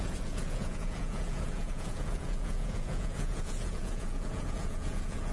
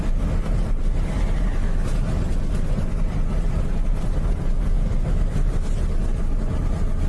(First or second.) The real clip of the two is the second